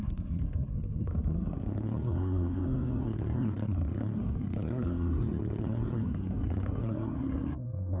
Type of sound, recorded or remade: remade